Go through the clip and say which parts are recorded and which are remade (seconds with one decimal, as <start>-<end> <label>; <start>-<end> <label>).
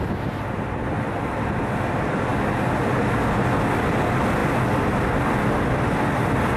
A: 0.0-6.6 recorded